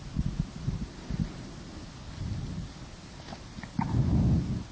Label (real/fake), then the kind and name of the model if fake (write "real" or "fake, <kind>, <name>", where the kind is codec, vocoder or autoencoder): real